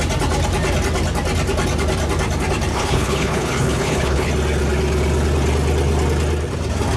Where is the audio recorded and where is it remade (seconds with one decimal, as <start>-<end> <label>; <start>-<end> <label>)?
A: 0.0-2.7 recorded; 2.7-4.3 remade; 4.3-7.0 recorded